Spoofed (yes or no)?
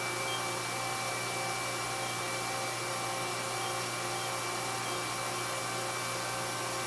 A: no